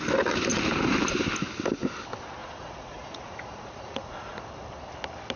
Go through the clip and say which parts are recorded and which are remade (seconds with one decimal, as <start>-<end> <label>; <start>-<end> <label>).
0.0-2.4 recorded; 2.4-4.4 remade; 4.4-5.4 recorded